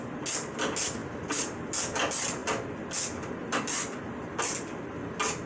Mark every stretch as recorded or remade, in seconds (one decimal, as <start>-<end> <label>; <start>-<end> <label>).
0.0-5.5 recorded